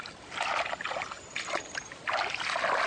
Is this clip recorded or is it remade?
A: recorded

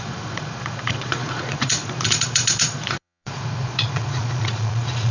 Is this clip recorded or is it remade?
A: remade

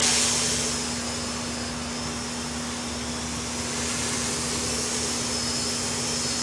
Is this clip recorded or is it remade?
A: recorded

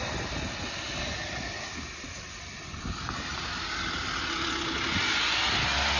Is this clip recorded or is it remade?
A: recorded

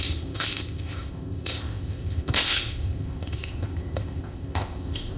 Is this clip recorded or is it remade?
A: remade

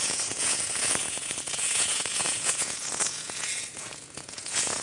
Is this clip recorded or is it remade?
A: remade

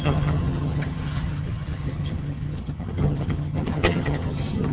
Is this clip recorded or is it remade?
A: remade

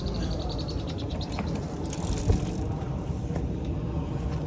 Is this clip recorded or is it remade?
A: remade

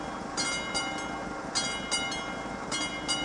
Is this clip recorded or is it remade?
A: recorded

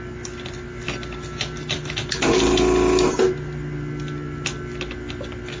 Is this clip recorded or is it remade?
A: recorded